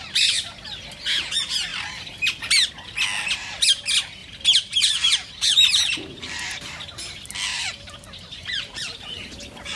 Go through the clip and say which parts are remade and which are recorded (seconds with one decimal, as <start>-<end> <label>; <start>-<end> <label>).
0.0-4.2 recorded; 4.2-6.6 remade; 6.6-7.5 recorded; 7.5-9.3 remade; 9.3-9.8 recorded